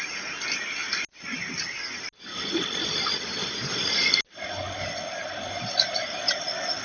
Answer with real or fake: real